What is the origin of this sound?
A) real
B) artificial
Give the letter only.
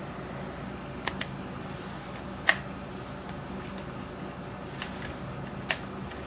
A